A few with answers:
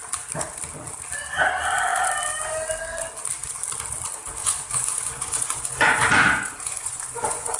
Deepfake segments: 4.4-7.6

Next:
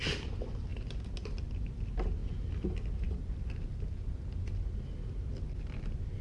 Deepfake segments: none

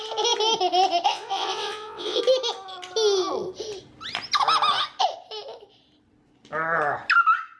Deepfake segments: 1.1-2.2